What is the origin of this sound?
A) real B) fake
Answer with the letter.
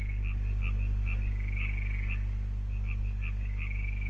A